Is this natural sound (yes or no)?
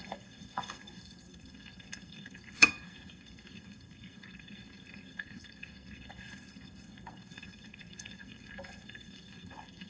no